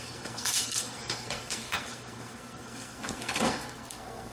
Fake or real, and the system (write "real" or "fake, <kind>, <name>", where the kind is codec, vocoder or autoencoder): fake, codec, SNAC